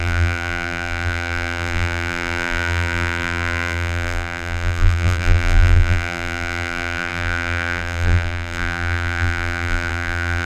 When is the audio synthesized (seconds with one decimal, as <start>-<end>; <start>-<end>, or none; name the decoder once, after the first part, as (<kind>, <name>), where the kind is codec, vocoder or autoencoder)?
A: 0.0-10.4 (vocoder, BigVGAN v2)